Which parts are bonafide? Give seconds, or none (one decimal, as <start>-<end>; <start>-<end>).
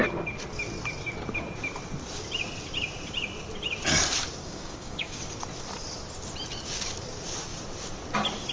0.0-4.4; 5.2-8.5